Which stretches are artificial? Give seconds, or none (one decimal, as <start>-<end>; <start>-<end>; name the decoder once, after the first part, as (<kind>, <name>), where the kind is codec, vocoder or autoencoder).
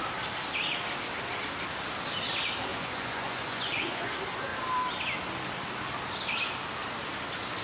2.7-4.1 (vocoder, Vocos)